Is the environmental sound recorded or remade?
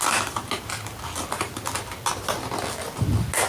recorded